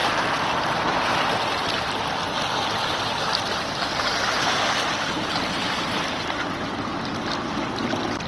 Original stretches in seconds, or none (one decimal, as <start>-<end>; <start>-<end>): 0.0-8.3